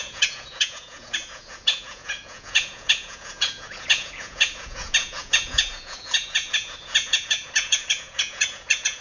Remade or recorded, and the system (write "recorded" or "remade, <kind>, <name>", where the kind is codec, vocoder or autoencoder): remade, vocoder, Vocos